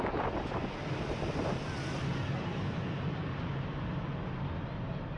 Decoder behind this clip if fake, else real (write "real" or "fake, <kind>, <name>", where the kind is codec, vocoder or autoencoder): real